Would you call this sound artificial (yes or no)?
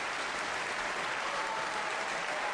no